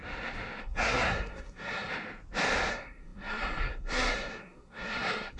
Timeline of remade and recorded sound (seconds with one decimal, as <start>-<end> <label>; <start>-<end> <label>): 0.0-0.6 recorded; 0.6-1.9 remade; 1.9-2.7 recorded; 2.7-5.4 remade